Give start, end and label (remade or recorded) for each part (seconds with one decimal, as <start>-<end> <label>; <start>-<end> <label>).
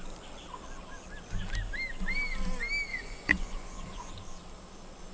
0.0-2.9 recorded; 2.9-4.1 remade; 4.1-5.1 recorded